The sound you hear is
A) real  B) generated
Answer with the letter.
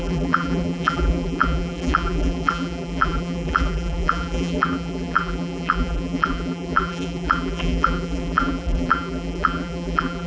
B